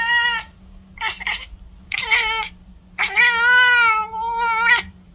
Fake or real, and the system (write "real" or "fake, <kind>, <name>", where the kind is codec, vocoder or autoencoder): real